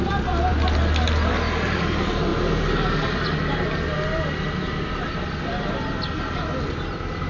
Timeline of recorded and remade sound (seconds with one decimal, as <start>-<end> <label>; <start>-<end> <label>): 0.0-7.3 recorded